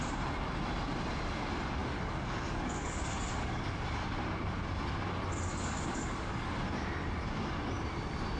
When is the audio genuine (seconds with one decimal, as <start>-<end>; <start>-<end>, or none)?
0.0-1.8; 3.8-5.5; 6.6-8.4